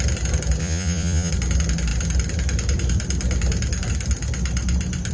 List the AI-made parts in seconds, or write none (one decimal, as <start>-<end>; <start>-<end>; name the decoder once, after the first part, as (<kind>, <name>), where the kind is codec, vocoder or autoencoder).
0.6-1.3 (vocoder, Vocos)